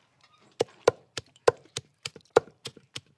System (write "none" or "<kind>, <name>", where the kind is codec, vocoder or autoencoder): vocoder, BigVGAN v2